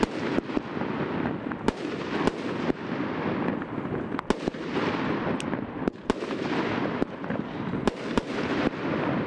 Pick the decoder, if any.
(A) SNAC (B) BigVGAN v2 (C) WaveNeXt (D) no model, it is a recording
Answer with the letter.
D